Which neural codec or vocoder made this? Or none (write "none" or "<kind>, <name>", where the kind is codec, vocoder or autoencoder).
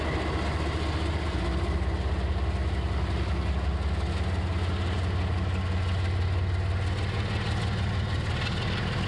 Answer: none